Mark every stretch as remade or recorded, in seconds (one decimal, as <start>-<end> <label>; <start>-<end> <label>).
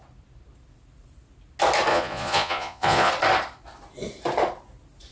0.0-1.9 recorded; 1.9-3.1 remade; 3.1-5.1 recorded